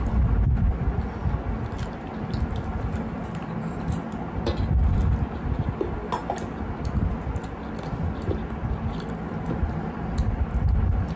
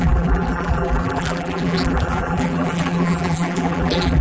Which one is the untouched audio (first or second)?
first